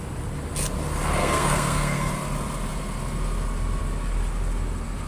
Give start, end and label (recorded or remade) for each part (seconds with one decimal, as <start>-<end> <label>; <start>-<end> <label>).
0.0-1.2 recorded; 1.2-2.1 remade; 2.1-5.1 recorded